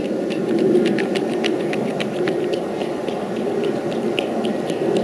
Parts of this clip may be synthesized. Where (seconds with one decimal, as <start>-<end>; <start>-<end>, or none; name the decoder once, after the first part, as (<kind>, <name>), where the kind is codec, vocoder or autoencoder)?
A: 1.9-3.4 (vocoder, BigVGAN v2)